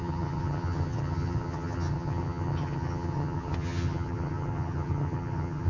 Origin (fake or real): fake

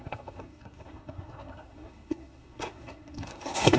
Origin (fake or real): fake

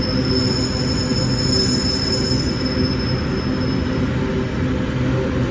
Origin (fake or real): real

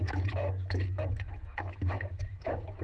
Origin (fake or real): fake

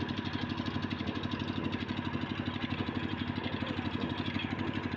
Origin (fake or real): real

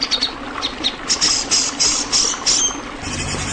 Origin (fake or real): real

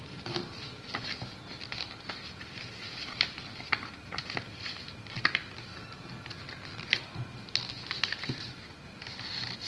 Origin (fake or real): real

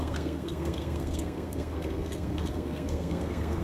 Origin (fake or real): fake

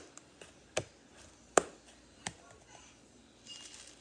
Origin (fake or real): real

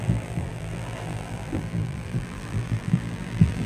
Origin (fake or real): fake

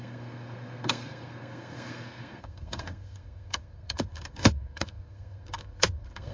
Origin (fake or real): fake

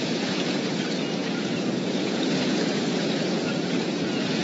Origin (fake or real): fake